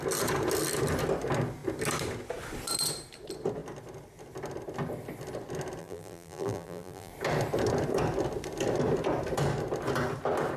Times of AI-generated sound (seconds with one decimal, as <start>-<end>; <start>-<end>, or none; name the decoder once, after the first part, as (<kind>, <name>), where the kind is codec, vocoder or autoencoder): 5.8-7.1 (vocoder, BigVGAN v2)

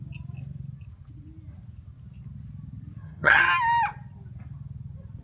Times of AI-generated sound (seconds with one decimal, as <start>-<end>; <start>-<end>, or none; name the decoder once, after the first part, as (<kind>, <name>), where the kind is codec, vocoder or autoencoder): 3.0-3.5 (vocoder, HiFi-GAN)

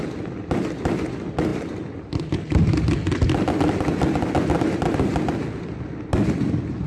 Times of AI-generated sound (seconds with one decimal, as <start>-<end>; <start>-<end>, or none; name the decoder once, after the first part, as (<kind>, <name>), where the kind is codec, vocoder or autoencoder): none

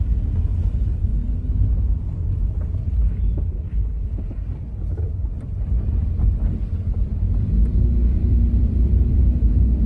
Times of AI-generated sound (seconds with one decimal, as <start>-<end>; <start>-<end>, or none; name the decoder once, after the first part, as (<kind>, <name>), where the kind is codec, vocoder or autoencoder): 5.2-9.2 (vocoder, BigVGAN v2)

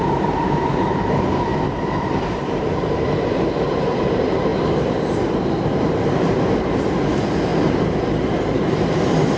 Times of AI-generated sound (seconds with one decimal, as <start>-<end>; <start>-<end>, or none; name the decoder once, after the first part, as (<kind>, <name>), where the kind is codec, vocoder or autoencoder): 0.0-1.5 (vocoder, BigVGAN v2); 2.2-7.5; 8.5-9.4

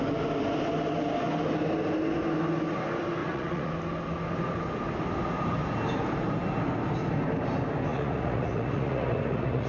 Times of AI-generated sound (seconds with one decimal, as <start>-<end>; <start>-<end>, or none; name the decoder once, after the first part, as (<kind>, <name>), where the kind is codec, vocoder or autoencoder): 3.2-3.7 (vocoder, Vocos); 7.9-9.7

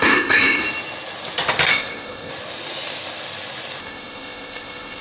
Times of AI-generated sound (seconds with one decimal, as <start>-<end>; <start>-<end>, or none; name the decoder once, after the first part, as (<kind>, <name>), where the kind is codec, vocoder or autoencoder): 0.0-0.6 (codec, ZipCodec); 1.7-2.3; 3.8-5.0

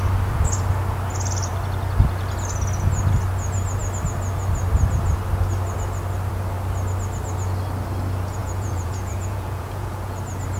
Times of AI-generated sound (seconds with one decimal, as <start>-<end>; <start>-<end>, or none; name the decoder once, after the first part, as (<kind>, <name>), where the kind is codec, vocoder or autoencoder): 8.4-10.2 (vocoder, Vocos)